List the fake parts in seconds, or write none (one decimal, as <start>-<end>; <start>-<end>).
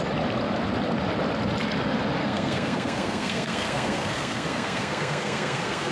2.2-5.9